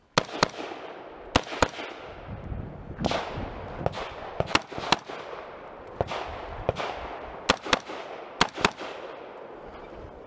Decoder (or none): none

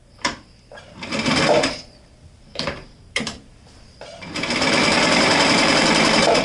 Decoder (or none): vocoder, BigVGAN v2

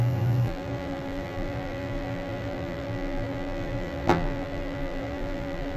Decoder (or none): vocoder, BigVGAN v2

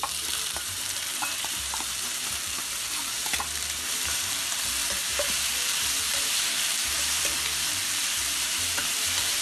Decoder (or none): vocoder, BigVGAN v2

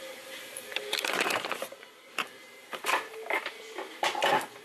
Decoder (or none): vocoder, BigVGAN v2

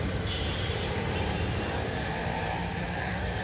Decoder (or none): vocoder, BigVGAN v2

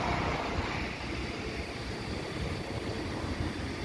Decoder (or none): none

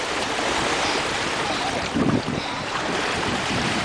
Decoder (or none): vocoder, BigVGAN v2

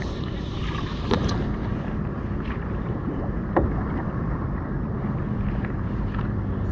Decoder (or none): vocoder, BigVGAN v2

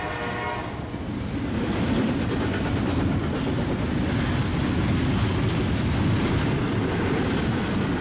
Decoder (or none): none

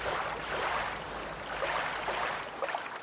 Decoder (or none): vocoder, BigVGAN v2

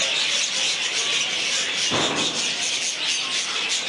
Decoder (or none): none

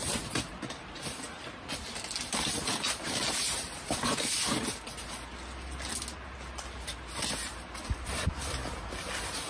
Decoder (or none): none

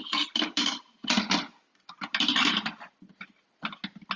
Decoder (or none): none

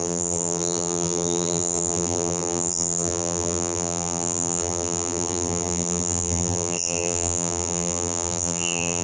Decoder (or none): vocoder, BigVGAN v2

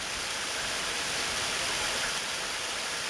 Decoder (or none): vocoder, BigVGAN v2